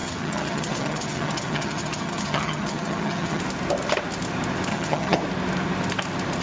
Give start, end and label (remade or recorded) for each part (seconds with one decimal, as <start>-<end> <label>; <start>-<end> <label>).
0.0-3.4 remade; 3.4-4.7 recorded; 4.7-5.2 remade; 5.2-6.4 recorded